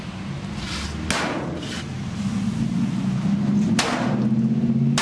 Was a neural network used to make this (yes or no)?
no